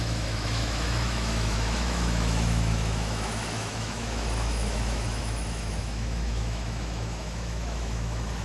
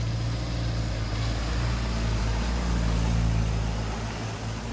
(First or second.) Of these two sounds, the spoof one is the first